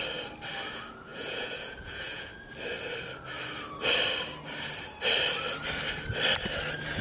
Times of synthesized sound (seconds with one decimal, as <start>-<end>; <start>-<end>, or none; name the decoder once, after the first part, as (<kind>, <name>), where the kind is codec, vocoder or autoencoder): 1.1-2.3 (vocoder, Vocos)